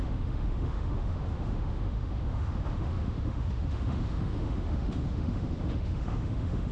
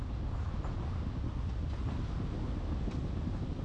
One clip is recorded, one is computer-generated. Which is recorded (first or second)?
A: second